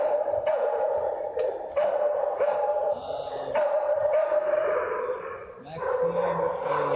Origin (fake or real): fake